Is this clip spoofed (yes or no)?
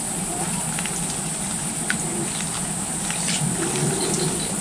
no